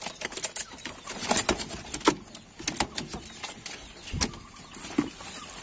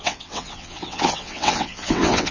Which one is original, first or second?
first